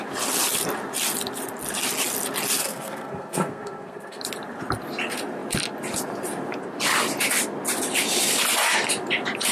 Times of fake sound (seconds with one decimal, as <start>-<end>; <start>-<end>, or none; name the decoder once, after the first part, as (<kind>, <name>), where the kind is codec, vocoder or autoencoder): 2.6-4.2 (codec, SNAC)